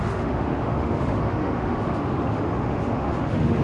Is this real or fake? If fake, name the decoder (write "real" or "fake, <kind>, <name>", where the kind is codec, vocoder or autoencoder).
fake, autoencoder, DAC-VAE